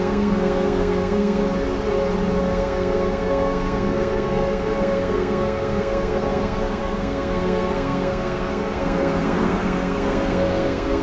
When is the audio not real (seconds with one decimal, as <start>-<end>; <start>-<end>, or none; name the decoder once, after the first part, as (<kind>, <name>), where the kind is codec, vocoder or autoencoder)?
0.0-1.4 (codec, SNAC); 2.4-11.0